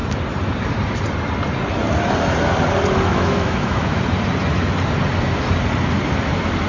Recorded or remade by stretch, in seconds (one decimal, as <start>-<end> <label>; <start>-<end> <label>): 0.0-3.1 recorded; 3.1-4.0 remade; 4.0-6.7 recorded